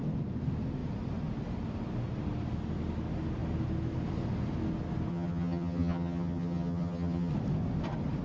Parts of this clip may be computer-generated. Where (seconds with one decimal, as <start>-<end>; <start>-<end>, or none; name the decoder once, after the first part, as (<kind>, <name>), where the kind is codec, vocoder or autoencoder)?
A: 5.1-7.3 (vocoder, HiFi-GAN)